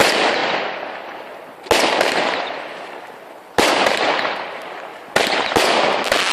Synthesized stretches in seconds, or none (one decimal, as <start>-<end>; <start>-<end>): none